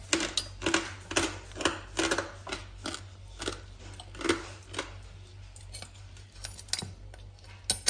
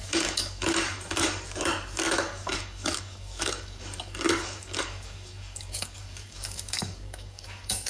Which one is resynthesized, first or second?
second